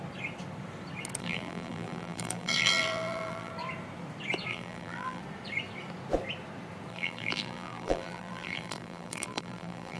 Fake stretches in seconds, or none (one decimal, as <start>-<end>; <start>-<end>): 1.2-3.5; 4.5-5.2; 6.9-10.0